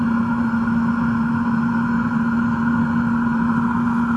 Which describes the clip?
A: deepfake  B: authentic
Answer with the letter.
B